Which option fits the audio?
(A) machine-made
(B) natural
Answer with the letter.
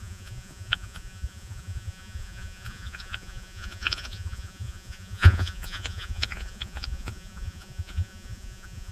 A